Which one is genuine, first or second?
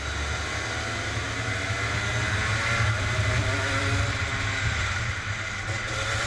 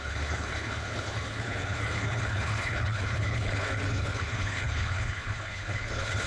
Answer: first